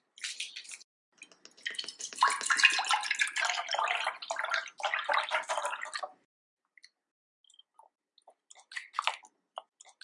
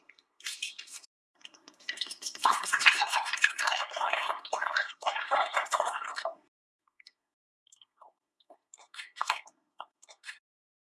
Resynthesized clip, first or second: second